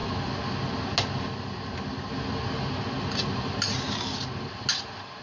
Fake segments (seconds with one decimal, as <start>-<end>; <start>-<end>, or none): none